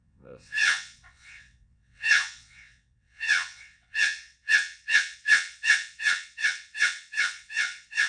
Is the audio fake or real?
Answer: fake